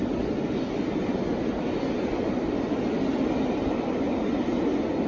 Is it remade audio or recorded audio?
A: recorded